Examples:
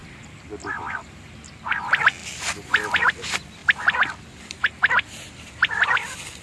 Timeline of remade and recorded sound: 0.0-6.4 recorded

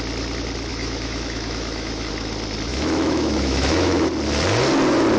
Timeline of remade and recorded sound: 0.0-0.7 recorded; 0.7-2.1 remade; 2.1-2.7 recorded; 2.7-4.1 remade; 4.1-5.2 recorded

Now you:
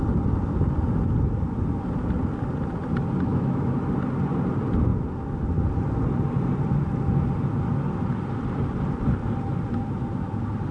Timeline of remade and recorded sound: 0.0-3.3 recorded; 3.3-3.8 remade; 3.8-10.7 recorded